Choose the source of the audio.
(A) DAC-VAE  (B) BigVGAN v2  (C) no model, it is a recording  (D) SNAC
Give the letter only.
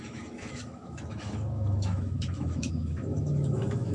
A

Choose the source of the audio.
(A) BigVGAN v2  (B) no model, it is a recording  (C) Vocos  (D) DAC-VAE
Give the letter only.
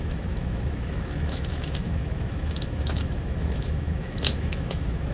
D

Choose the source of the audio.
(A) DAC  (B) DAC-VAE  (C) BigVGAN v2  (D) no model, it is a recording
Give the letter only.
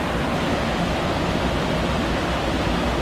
D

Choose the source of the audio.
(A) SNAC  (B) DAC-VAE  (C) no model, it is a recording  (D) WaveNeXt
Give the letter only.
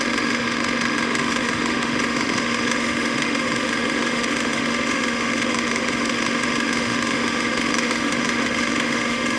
B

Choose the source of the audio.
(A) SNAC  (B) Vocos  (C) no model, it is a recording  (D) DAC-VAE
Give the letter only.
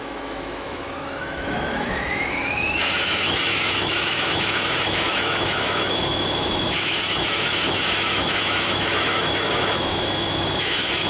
D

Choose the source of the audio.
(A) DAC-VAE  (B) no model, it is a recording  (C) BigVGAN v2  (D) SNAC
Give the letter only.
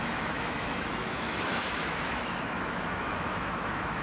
A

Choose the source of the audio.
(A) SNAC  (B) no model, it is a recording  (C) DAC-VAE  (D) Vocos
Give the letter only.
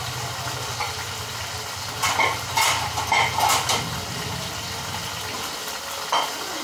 B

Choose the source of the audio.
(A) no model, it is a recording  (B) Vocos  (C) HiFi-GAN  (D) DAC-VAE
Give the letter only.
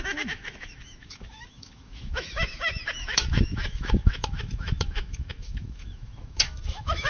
D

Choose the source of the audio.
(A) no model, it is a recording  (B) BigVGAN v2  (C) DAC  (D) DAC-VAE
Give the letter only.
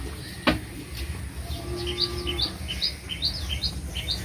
A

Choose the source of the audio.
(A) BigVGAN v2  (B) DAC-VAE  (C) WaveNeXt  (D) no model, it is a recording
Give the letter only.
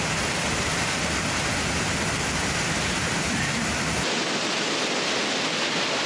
D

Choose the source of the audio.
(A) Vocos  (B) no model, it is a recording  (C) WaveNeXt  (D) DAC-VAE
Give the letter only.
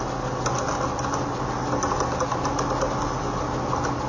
B